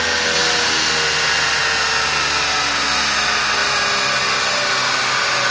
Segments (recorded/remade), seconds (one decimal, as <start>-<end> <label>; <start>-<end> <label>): 0.0-5.5 recorded